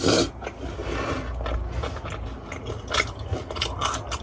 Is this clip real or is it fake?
real